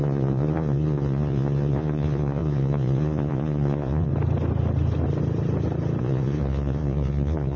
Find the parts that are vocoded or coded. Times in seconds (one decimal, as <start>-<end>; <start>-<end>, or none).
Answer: 0.0-4.1; 6.0-7.6